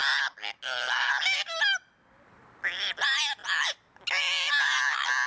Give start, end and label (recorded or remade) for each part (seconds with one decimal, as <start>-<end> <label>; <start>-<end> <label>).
0.0-5.3 recorded